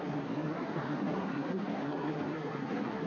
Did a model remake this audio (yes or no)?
yes